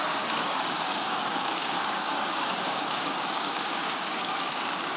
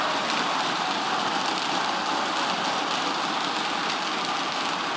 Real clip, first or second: second